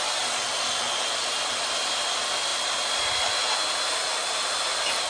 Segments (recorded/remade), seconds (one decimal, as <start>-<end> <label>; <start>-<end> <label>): 0.0-5.1 recorded